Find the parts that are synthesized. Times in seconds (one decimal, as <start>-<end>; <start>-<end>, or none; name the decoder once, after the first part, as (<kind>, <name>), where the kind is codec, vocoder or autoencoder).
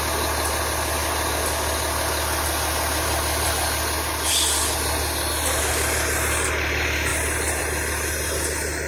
none